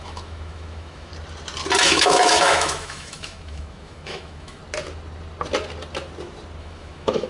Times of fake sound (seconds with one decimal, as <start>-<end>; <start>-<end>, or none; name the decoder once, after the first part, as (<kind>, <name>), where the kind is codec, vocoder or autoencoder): 0.0-1.1 (autoencoder, DAC-VAE); 1.8-4.6; 6.6-7.3